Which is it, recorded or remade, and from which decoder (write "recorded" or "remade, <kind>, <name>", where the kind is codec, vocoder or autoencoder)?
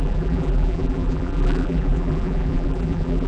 remade, vocoder, BigVGAN v2